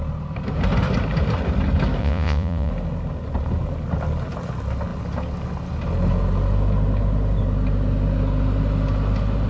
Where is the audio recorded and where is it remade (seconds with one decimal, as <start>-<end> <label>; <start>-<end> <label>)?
0.0-2.0 recorded; 2.0-2.7 remade; 2.7-9.5 recorded